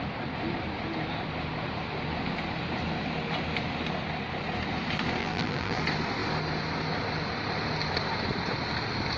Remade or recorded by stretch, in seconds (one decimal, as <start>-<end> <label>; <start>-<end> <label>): 0.0-5.2 recorded; 5.2-5.8 remade; 5.8-9.2 recorded